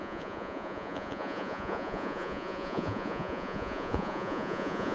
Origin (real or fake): fake